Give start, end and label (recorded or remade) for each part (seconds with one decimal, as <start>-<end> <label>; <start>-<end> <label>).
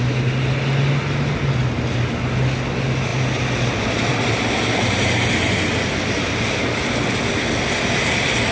0.0-8.5 recorded